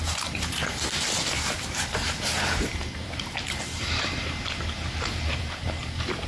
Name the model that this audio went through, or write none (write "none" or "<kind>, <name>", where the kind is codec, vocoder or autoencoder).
vocoder, BigVGAN v2